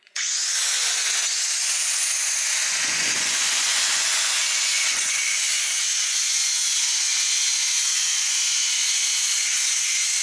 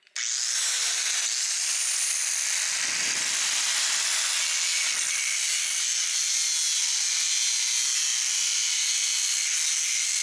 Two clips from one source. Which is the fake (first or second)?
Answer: first